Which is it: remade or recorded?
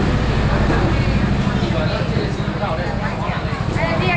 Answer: recorded